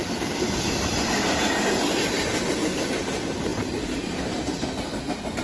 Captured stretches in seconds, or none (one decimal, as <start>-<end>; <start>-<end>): 0.0-5.4